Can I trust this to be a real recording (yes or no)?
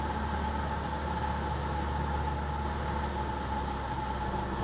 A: yes